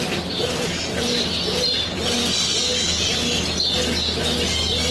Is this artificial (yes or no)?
no